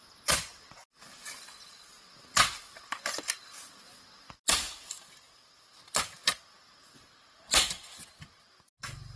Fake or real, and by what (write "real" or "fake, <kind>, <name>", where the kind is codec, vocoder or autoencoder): real